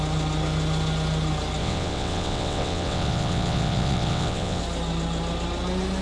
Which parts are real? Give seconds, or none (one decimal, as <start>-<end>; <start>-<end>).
0.0-1.6; 4.6-6.0